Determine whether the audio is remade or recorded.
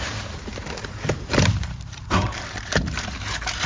remade